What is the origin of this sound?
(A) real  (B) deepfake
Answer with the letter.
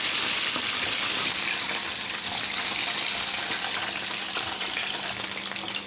B